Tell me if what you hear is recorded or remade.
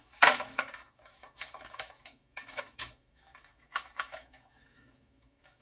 remade